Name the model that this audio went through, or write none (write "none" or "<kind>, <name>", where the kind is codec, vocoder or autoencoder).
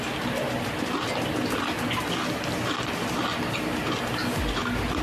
none